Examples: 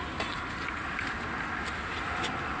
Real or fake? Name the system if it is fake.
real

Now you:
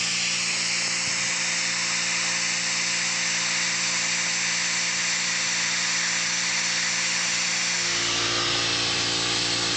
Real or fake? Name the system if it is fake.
real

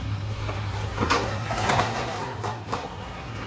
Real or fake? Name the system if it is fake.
fake, codec, SNAC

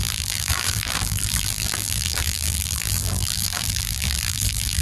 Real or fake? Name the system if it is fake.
fake, vocoder, BigVGAN v2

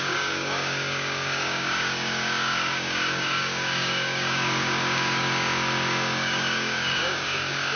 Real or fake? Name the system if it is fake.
fake, codec, DAC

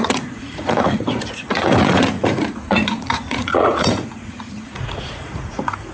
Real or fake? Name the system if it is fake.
fake, vocoder, Vocos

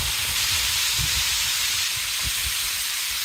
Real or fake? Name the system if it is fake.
fake, vocoder, BigVGAN v2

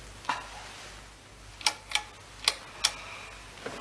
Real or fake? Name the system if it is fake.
real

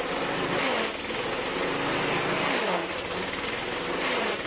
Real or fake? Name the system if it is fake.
real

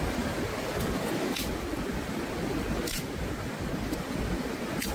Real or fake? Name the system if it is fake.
real